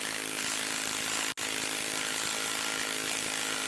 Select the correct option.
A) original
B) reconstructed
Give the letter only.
A